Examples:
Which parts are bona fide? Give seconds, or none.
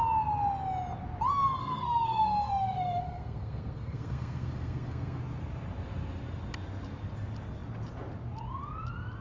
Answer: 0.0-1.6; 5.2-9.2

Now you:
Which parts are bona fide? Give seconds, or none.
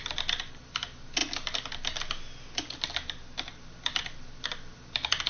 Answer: 0.0-5.3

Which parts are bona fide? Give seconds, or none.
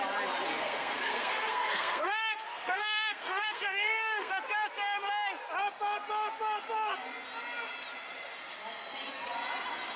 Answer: 0.0-0.6; 4.3-10.0